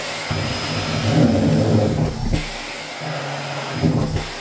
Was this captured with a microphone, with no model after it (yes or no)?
yes